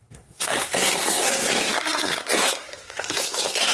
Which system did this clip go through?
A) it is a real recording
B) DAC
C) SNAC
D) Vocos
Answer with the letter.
C